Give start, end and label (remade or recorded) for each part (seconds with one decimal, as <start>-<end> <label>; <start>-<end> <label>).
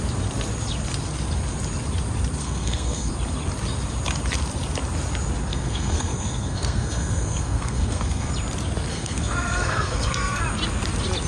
0.0-2.4 recorded; 2.4-3.1 remade; 3.1-5.5 recorded; 5.5-8.3 remade; 8.3-8.9 recorded; 8.9-10.4 remade; 10.4-11.3 recorded